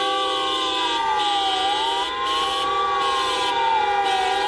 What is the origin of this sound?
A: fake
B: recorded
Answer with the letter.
B